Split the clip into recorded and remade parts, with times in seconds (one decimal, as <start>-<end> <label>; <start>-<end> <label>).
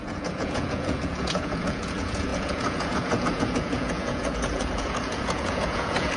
0.0-6.2 remade